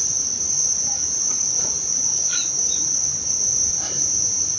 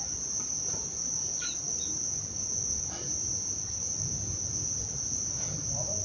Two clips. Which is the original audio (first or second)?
second